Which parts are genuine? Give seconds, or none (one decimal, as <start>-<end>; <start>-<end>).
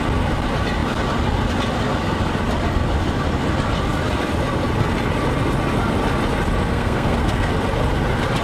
0.0-6.7; 7.5-8.4